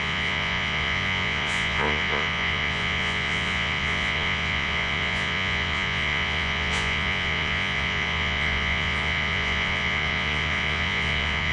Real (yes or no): no